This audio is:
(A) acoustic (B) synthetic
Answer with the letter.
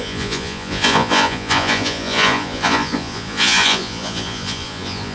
B